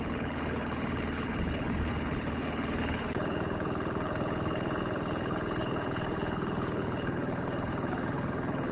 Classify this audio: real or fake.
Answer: fake